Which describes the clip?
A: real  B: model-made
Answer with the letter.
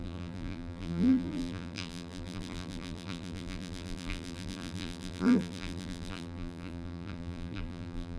B